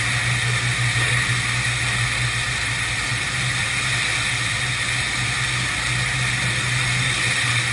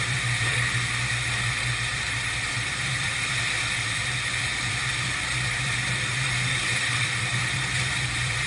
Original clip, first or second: first